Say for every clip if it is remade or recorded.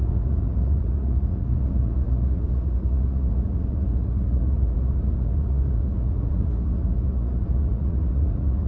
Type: remade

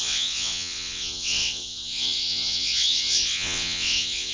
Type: remade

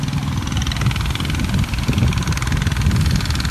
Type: recorded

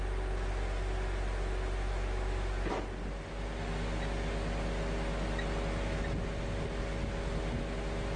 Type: recorded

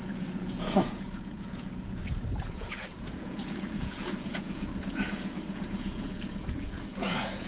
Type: remade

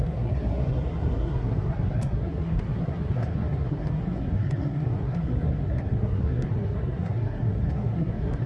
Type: remade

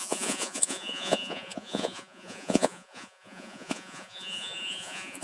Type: remade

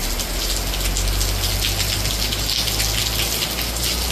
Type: recorded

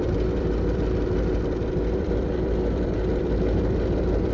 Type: remade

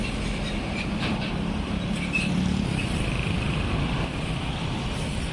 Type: remade